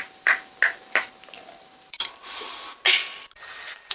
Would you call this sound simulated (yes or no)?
no